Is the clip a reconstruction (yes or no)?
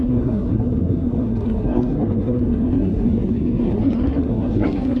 yes